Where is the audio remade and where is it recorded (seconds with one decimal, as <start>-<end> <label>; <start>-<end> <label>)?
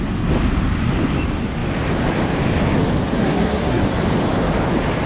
0.0-3.1 recorded; 3.1-3.8 remade; 3.8-5.1 recorded